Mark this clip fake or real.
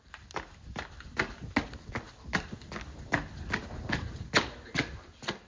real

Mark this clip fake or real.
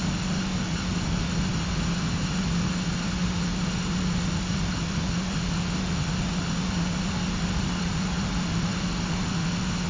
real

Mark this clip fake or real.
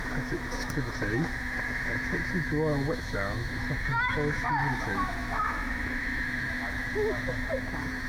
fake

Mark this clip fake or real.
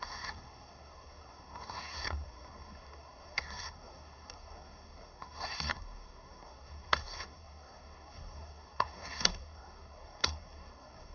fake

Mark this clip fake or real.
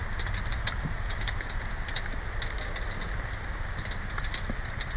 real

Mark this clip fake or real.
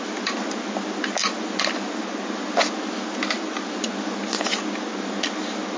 real